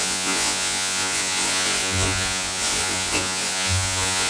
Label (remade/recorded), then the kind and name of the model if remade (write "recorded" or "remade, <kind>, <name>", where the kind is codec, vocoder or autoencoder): remade, vocoder, Vocos